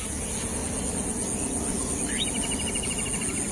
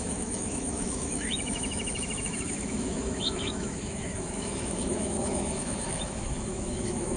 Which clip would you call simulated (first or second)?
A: second